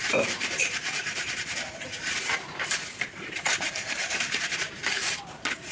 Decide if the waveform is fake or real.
fake